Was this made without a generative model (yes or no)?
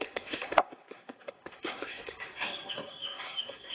no